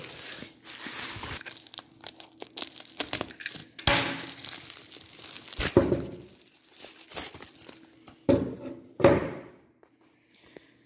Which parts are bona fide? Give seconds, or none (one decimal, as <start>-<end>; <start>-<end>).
0.0-10.9